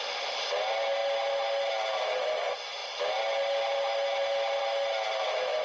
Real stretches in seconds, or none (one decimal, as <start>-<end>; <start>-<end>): 0.0-5.6